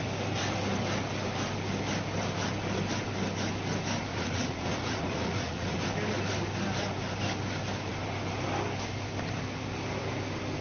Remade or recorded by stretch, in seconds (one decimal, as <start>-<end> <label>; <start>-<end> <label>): 0.0-4.1 recorded; 4.1-5.8 remade; 5.8-10.6 recorded